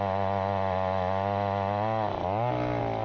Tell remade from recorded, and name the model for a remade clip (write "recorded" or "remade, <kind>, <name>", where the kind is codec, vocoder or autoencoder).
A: recorded